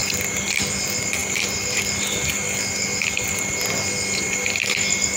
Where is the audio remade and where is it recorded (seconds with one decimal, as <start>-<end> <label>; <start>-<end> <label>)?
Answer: 0.0-5.2 recorded